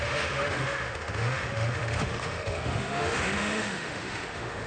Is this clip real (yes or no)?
no